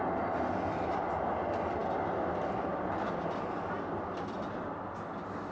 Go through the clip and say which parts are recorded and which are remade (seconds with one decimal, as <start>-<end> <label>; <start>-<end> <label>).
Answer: 0.0-5.5 recorded